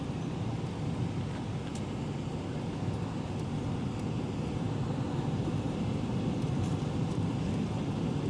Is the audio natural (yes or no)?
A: yes